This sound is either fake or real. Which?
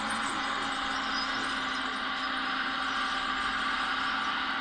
real